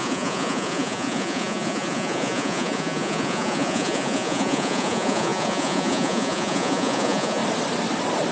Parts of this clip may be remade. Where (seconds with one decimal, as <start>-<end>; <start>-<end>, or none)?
0.0-7.4